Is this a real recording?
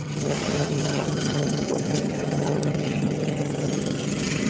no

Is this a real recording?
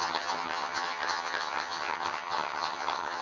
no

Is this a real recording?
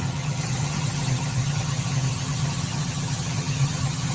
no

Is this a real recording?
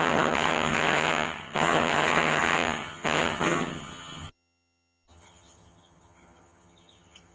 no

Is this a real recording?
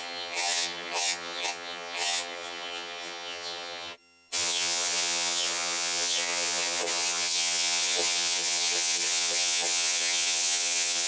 no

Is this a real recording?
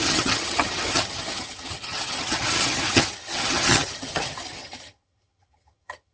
no